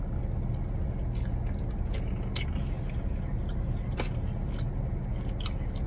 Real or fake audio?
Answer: real